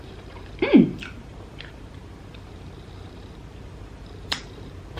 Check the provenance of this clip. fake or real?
fake